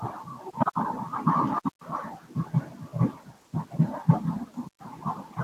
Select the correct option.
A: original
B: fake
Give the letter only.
A